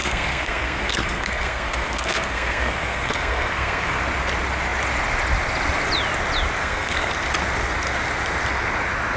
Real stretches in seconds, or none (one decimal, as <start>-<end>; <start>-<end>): 4.0-6.6; 7.1-9.2